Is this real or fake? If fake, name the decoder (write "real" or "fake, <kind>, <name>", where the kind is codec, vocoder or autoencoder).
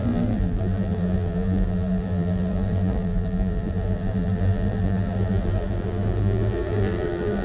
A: fake, vocoder, BigVGAN v2